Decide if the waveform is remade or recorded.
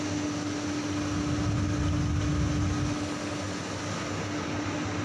recorded